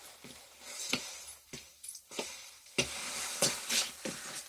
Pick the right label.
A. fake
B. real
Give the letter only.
B